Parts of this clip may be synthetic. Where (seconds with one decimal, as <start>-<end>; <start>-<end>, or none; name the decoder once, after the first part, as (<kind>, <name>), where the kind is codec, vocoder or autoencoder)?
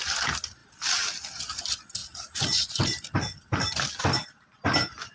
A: none